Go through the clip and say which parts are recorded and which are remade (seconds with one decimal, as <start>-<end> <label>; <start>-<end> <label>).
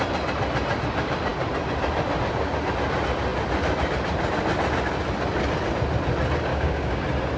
0.0-6.5 recorded; 6.5-7.0 remade; 7.0-7.4 recorded